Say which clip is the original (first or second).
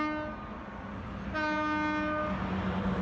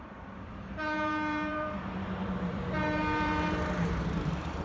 first